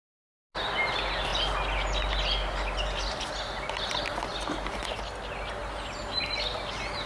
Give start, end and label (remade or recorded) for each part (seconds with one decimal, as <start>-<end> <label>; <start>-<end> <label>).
0.0-4.3 recorded; 4.3-4.9 remade; 4.9-7.1 recorded